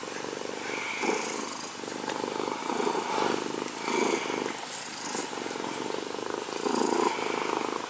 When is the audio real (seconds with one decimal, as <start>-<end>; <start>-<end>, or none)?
2.7-7.9

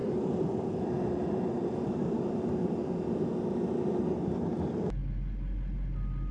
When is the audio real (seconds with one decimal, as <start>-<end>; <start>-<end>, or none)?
0.5-1.2; 3.3-6.3

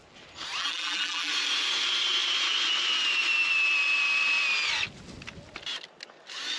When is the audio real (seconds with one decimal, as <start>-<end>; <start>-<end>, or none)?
0.0-0.6; 1.3-6.6

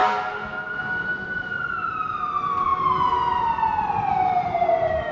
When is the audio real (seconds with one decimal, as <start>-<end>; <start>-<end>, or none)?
0.0-1.8; 2.7-4.1

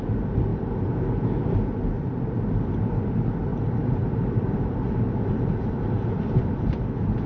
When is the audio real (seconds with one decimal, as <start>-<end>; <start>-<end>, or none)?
0.0-0.5; 1.1-3.5

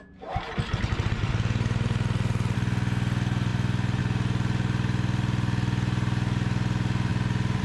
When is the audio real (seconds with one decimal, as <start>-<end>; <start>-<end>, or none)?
0.0-3.5; 4.0-7.6

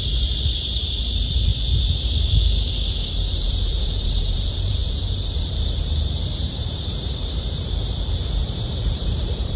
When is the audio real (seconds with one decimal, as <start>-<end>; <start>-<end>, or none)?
1.5-3.1